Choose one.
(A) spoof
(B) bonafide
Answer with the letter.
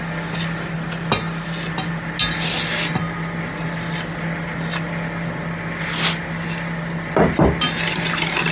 B